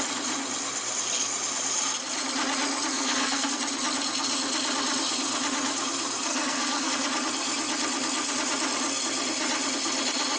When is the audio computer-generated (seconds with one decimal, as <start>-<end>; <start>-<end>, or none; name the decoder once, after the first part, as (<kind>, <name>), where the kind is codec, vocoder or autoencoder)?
2.9-3.6 (codec, SNAC); 6.3-6.9